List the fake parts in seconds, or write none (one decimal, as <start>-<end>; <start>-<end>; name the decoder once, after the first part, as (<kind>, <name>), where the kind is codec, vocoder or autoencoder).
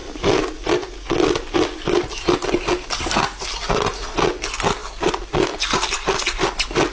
none